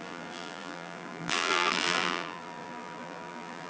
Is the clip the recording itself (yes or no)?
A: no